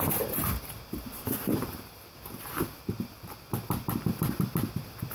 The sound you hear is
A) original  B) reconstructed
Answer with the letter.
A